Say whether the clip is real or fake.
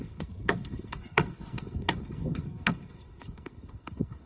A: fake